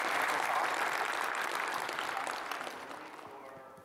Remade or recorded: remade